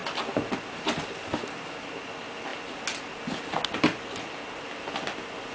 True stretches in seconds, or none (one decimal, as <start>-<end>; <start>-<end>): 0.0-5.5